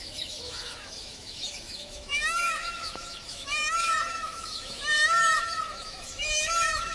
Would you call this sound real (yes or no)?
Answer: no